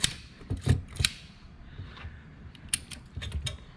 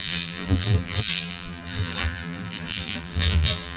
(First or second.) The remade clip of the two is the second